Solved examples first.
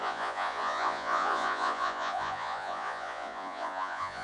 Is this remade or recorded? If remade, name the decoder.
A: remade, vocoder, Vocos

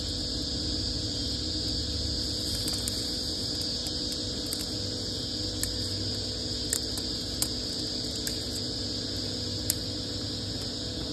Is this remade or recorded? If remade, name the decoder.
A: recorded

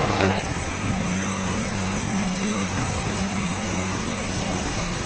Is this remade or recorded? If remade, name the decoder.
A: remade, codec, SNAC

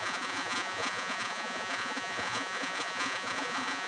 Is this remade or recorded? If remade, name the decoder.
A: remade, vocoder, Vocos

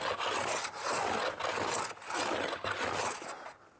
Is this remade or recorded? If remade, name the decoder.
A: recorded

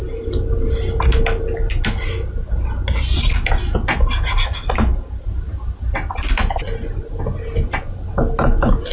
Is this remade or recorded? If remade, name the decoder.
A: recorded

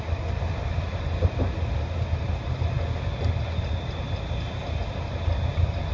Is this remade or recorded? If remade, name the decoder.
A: recorded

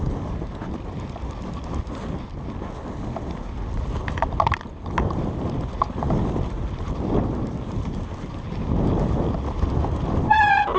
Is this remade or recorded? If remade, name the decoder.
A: recorded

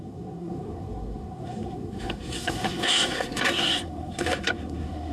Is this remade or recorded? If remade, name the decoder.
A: remade, codec, SNAC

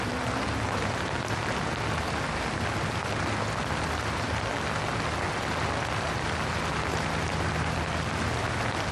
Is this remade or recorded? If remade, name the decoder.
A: recorded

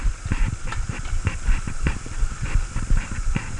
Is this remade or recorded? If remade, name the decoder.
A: remade, vocoder, BigVGAN v2